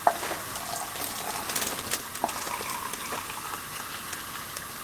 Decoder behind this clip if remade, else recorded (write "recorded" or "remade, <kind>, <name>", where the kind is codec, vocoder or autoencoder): recorded